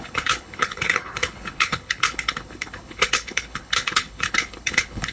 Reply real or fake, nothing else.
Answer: fake